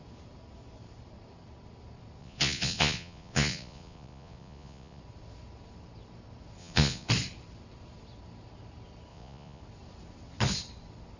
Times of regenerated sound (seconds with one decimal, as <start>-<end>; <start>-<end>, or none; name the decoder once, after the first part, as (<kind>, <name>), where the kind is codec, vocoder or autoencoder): 2.2-5.0 (vocoder, Vocos); 6.6-7.1; 9.1-9.6